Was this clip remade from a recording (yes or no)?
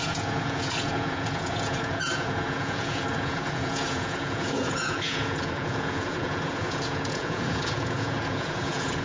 yes